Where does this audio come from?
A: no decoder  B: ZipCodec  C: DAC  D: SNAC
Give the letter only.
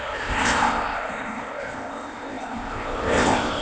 B